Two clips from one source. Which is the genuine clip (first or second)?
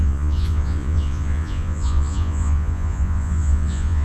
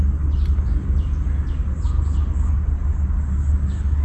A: second